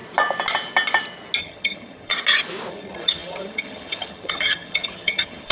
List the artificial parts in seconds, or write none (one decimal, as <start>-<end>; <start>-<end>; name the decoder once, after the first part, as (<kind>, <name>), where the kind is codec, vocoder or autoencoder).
1.4-2.1 (vocoder, HiFi-GAN); 2.7-5.5